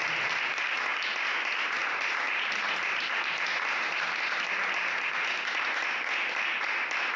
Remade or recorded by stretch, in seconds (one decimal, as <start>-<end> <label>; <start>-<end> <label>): 0.0-0.9 recorded; 0.9-5.2 remade; 5.2-7.2 recorded